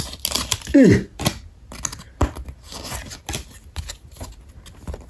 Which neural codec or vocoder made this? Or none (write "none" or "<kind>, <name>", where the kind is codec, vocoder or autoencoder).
none